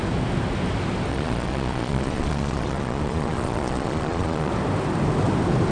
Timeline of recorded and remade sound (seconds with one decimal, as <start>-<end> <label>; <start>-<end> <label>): 0.0-1.1 recorded; 1.1-4.5 remade; 4.5-5.7 recorded